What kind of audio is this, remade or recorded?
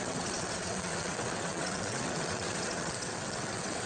remade